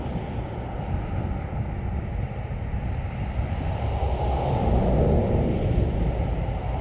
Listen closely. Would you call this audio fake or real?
real